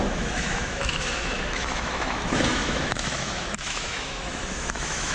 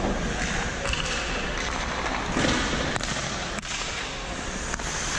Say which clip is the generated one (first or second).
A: first